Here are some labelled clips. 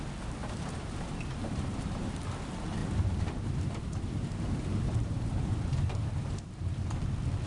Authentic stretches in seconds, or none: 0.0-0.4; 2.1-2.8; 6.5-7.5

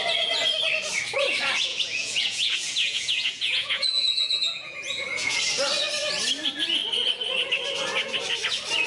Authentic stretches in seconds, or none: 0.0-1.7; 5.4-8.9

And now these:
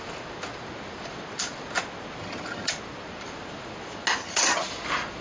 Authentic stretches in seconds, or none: 0.0-2.2; 2.7-4.2; 4.7-5.2

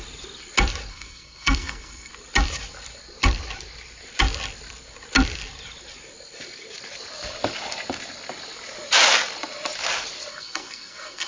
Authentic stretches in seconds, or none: 0.0-0.9; 2.1-10.3